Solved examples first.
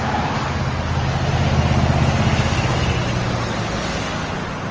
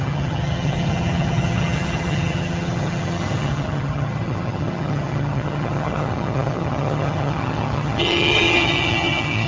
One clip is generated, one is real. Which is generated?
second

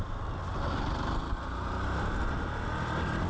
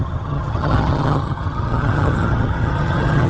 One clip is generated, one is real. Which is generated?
second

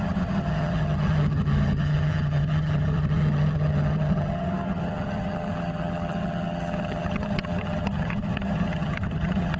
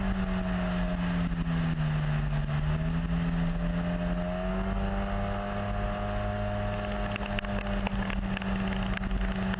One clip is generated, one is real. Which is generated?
first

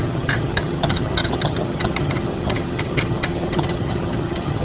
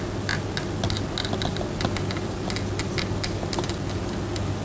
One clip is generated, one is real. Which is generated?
first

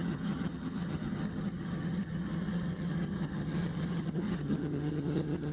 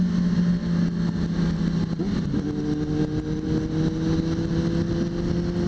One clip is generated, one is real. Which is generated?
first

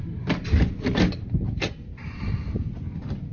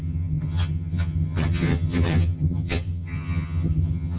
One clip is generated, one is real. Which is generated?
second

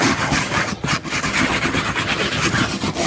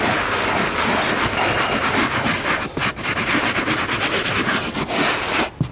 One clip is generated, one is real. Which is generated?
first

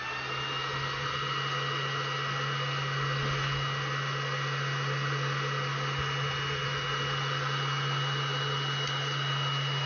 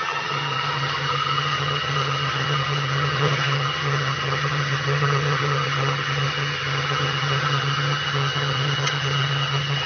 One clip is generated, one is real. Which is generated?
second